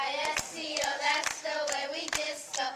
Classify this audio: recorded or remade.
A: recorded